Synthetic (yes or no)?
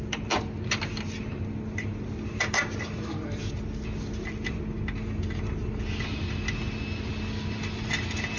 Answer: no